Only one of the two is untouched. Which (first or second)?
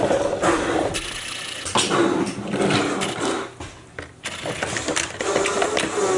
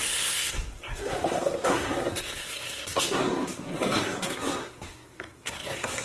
first